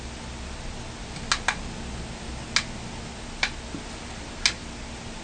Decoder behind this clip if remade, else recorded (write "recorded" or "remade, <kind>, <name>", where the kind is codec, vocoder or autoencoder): recorded